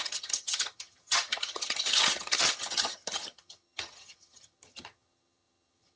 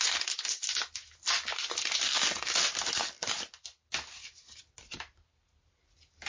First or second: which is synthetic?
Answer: first